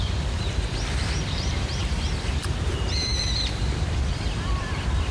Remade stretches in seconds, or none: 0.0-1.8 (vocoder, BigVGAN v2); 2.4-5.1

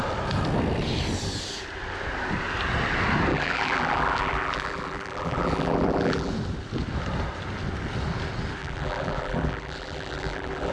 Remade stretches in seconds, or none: 3.3-6.3 (vocoder, BigVGAN v2); 8.6-10.7

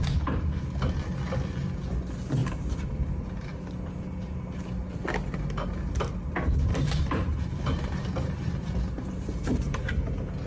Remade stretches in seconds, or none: 2.4-2.9 (vocoder, BigVGAN v2); 6.7-10.0

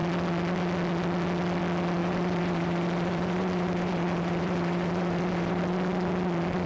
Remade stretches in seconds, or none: 2.0-5.6 (vocoder, BigVGAN v2)

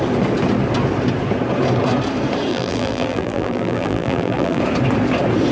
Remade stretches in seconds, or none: 2.5-4.6 (vocoder, BigVGAN v2)

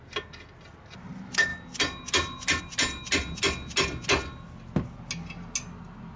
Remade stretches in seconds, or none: none